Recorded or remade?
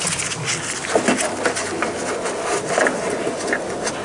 recorded